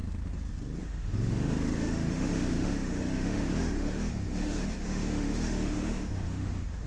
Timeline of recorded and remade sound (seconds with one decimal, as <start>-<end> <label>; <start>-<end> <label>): 0.0-0.8 recorded; 0.8-6.9 remade